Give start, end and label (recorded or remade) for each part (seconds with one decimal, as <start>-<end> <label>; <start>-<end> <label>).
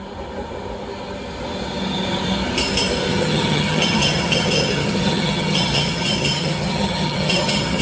0.0-3.1 recorded; 3.1-7.8 remade